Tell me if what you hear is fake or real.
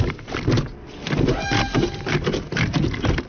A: real